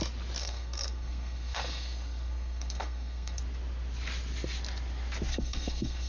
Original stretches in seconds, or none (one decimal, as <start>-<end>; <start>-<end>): 0.0-0.4; 3.4-5.3